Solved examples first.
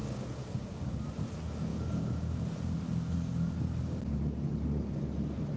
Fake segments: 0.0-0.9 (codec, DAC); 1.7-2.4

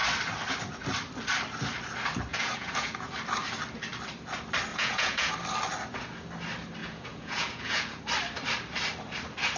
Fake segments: 2.3-3.1 (vocoder, Vocos); 4.7-5.3; 6.8-8.0

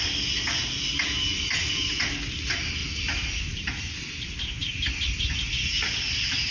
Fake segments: 2.8-3.8 (vocoder, BigVGAN v2)

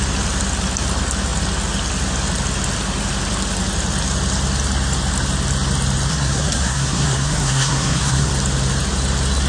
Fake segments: 6.1-8.3 (codec, SNAC)

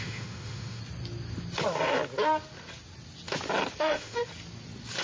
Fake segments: 0.0-0.8 (autoencoder, DAC-VAE); 3.8-4.2